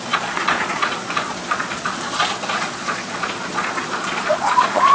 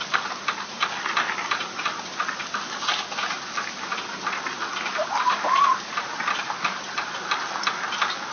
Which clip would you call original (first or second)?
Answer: second